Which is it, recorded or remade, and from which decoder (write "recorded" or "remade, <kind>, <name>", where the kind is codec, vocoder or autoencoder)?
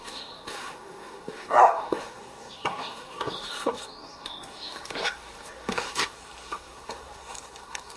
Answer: remade, codec, SNAC